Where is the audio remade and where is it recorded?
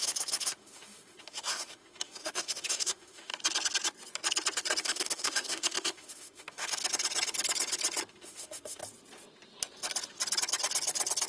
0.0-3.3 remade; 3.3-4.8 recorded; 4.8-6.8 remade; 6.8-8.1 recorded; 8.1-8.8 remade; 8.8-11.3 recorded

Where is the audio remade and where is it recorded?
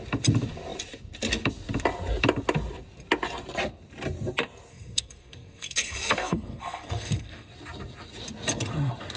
0.0-4.7 recorded; 4.7-7.5 remade; 7.5-9.2 recorded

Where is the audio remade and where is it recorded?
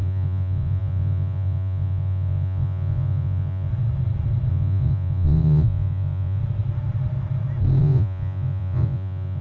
0.0-3.7 remade; 3.7-4.5 recorded; 4.5-6.4 remade; 6.4-7.8 recorded; 7.8-9.4 remade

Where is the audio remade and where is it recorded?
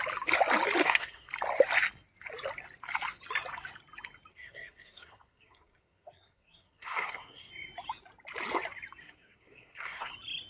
0.0-0.8 recorded; 0.8-1.3 remade; 1.3-4.3 recorded; 4.3-7.5 remade; 7.5-9.0 recorded; 9.0-10.1 remade; 10.1-10.5 recorded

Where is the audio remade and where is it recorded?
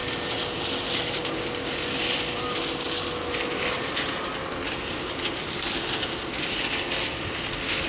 0.0-7.9 recorded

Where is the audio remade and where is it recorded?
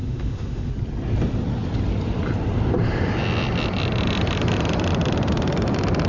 0.0-0.7 remade; 0.7-6.1 recorded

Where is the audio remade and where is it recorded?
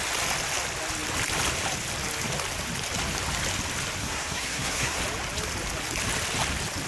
0.0-4.0 recorded; 4.0-5.0 remade; 5.0-6.9 recorded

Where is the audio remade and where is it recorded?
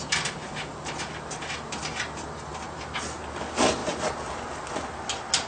0.0-5.5 recorded